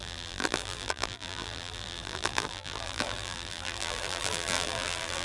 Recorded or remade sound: remade